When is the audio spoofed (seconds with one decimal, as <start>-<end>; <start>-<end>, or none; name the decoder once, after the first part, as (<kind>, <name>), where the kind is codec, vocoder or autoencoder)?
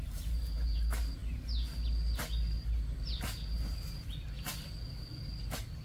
none